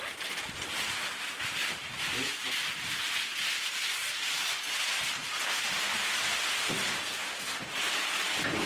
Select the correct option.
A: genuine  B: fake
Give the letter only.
A